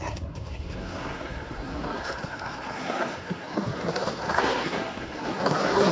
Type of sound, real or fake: fake